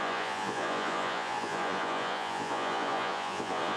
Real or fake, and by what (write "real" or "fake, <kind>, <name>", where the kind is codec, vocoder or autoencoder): fake, vocoder, Vocos